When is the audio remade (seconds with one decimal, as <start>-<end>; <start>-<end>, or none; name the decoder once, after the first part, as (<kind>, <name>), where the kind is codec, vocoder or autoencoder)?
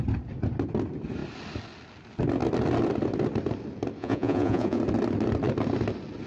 4.0-4.8 (vocoder, Vocos)